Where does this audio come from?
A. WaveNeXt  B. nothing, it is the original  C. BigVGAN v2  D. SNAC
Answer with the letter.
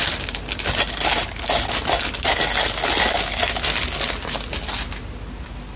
B